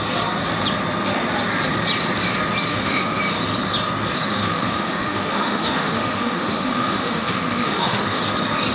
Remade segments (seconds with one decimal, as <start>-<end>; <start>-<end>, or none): 2.7-3.2; 4.3-8.2